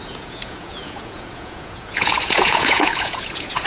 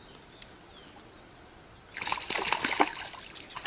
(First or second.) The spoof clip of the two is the first